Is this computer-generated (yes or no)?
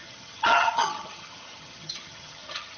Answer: yes